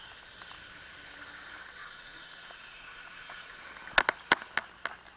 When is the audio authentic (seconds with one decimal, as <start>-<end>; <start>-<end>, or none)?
0.0-1.8; 3.6-5.2